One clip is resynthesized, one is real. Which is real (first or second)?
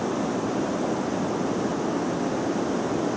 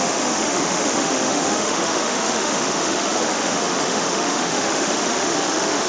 first